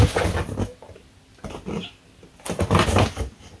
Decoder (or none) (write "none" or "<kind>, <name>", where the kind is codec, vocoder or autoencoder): none